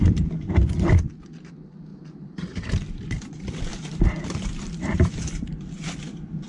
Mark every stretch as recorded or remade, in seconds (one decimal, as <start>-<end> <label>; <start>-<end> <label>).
0.0-1.9 recorded; 1.9-3.2 remade; 3.2-3.7 recorded; 3.7-5.5 remade; 5.5-6.5 recorded